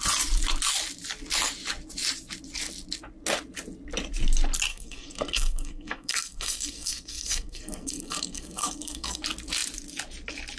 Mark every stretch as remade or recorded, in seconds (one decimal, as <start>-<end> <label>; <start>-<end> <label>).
0.0-4.7 recorded; 4.7-9.2 remade; 9.2-10.6 recorded